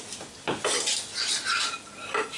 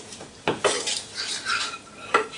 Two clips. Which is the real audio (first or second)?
first